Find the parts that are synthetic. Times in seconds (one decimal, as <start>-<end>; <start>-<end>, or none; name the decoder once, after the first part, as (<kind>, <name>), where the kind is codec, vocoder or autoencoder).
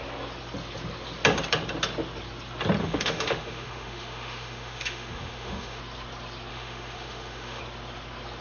2.8-5.8 (autoencoder, DAC-VAE); 6.5-7.6